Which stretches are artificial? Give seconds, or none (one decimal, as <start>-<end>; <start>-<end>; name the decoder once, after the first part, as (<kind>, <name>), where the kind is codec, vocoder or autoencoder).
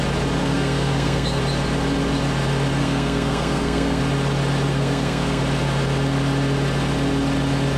0.4-1.4 (codec, SNAC); 2.8-4.0; 4.7-5.4